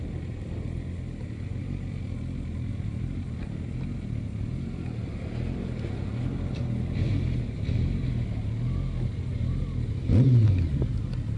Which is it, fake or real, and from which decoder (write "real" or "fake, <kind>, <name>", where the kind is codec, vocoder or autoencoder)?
real